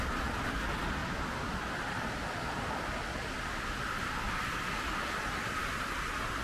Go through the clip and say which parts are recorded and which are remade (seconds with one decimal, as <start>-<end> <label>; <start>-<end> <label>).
0.0-6.4 recorded